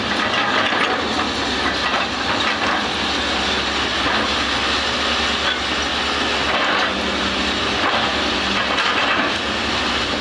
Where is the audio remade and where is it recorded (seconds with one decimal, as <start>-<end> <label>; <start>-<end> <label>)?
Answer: 0.0-10.2 recorded